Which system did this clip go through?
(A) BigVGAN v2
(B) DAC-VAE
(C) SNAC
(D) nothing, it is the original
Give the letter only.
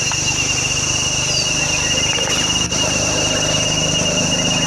D